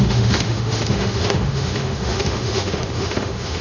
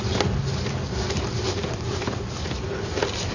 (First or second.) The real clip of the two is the second